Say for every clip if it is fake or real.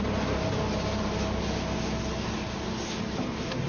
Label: real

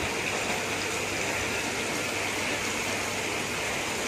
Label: real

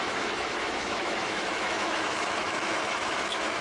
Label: fake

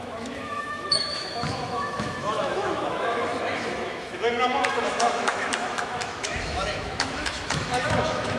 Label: fake